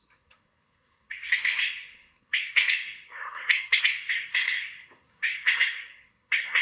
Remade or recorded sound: remade